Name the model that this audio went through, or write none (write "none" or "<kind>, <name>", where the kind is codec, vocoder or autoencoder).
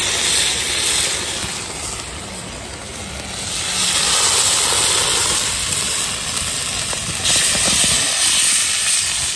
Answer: none